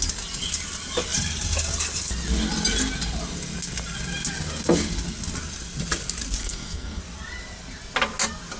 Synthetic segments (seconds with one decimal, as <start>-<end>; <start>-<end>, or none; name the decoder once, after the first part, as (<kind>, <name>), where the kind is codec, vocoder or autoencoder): 6.4-7.0 (codec, SNAC)